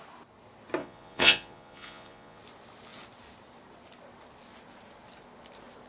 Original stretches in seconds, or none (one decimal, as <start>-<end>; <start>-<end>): 0.0-0.8; 2.4-5.9